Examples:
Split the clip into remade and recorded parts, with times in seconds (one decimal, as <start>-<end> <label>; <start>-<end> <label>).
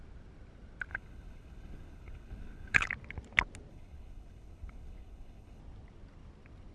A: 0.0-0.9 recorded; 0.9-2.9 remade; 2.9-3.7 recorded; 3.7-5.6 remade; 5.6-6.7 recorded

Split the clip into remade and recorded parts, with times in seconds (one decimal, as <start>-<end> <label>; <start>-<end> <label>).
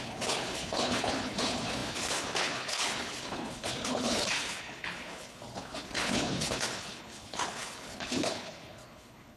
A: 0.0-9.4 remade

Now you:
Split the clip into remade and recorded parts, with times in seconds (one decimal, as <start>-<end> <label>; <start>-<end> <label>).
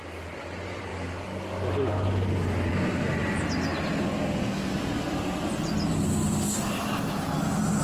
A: 0.0-7.8 recorded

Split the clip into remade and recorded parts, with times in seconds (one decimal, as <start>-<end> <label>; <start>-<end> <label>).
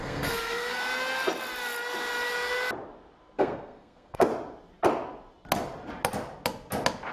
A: 0.0-0.8 remade; 0.8-3.4 recorded; 3.4-4.3 remade; 4.3-7.1 recorded